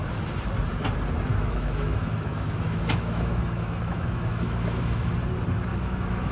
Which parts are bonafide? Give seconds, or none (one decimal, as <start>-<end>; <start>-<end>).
0.0-1.3; 5.1-5.7